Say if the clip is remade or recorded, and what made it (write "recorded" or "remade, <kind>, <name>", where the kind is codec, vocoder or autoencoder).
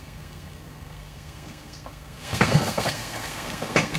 remade, codec, SNAC